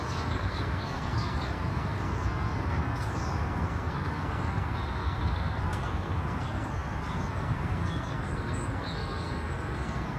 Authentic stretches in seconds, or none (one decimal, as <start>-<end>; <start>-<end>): none